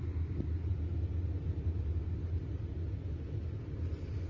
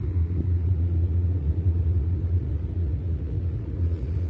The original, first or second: first